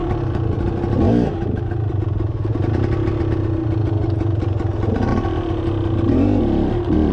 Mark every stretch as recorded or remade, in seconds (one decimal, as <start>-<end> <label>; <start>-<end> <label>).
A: 0.0-7.1 recorded